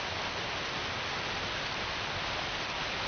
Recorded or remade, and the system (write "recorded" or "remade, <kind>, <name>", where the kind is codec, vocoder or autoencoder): recorded